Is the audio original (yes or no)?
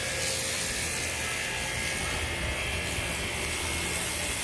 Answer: yes